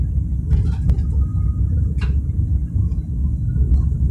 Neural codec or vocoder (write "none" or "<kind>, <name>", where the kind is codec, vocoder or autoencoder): none